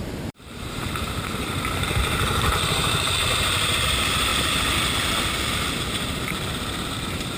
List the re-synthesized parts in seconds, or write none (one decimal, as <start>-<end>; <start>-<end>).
0.0-4.3; 5.8-7.4